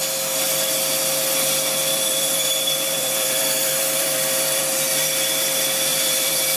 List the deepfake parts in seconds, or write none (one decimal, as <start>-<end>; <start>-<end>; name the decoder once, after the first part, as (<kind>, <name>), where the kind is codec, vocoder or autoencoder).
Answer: 1.9-4.6 (vocoder, BigVGAN v2); 5.9-6.6